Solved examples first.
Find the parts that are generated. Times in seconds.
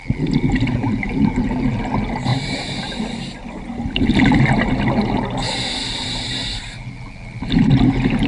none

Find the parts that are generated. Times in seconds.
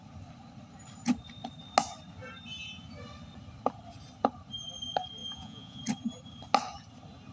5.2-5.8 (vocoder, Vocos)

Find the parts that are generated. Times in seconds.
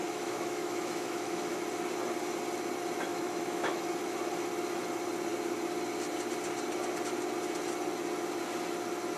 0.0-1.6 (autoencoder, DAC-VAE); 3.1-3.8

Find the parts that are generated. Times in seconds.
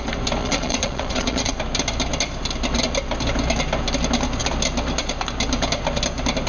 0.4-1.6 (vocoder, Vocos)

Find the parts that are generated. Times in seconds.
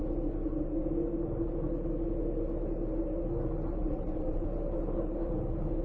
3.8-4.5 (vocoder, BigVGAN v2)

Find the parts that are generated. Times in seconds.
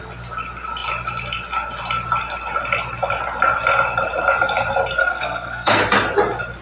5.0-5.8 (codec, SNAC)